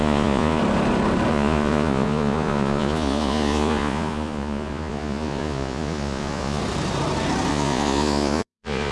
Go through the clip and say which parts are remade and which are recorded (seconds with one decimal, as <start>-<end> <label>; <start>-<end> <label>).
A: 0.0-0.6 remade; 0.6-1.3 recorded; 1.3-6.6 remade; 6.6-7.5 recorded; 7.5-8.9 remade